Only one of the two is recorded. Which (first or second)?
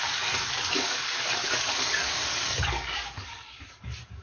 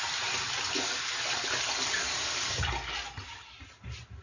second